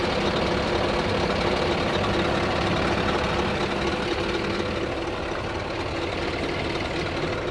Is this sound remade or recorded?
recorded